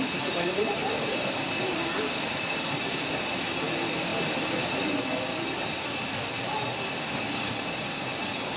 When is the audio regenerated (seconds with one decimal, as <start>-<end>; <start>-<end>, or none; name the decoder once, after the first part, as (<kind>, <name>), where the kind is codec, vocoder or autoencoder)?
0.0-4.1 (vocoder, BigVGAN v2); 6.8-8.6